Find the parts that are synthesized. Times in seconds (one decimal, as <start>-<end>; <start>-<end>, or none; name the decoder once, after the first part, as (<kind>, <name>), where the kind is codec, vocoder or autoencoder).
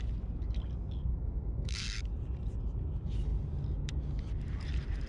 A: 1.1-2.0 (codec, SNAC)